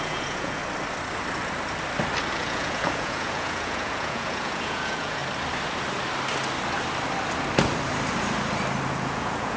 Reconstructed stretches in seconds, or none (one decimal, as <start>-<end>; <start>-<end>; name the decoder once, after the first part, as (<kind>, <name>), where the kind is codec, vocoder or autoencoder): 0.0-0.6 (vocoder, Vocos); 2.3-5.2; 8.9-9.6